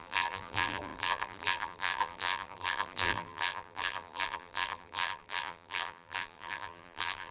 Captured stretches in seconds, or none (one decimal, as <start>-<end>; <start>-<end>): none

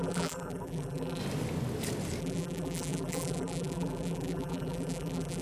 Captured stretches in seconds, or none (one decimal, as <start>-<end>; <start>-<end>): 1.2-2.2

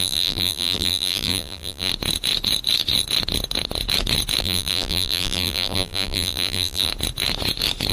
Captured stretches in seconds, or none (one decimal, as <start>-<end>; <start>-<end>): 1.9-4.4; 6.9-7.9